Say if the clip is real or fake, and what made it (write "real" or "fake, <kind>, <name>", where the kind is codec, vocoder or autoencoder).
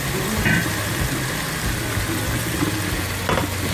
real